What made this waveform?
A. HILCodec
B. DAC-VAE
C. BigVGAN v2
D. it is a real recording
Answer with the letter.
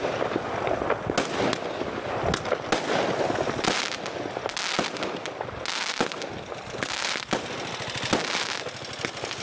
D